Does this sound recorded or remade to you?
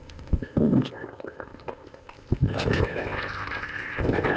remade